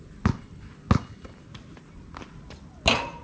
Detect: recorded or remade recorded